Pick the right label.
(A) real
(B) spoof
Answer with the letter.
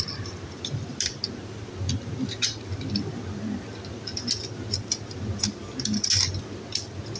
A